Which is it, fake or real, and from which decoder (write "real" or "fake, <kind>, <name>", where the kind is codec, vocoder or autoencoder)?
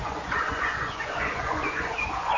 fake, vocoder, Vocos